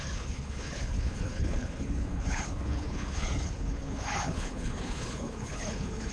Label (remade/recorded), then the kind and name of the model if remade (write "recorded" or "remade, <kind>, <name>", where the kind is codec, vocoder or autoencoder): remade, codec, HILCodec